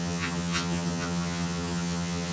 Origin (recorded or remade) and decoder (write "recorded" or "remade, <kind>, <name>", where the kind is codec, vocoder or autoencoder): remade, vocoder, HiFi-GAN